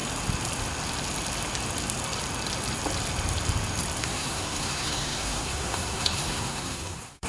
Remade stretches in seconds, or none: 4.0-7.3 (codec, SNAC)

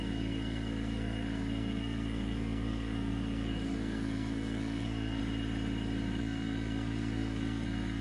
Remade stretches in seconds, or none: 0.0-5.2 (codec, SNAC); 6.2-8.0

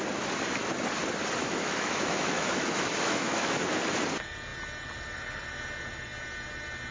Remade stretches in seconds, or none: 1.4-3.6 (autoencoder, DAC-VAE)

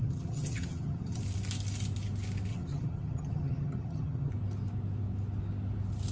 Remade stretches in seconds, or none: 0.0-1.2 (vocoder, HiFi-GAN); 2.5-4.3

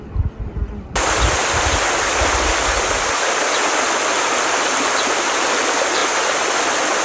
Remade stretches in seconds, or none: none

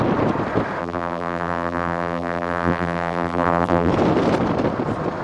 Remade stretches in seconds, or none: 0.8-3.9 (vocoder, BigVGAN v2)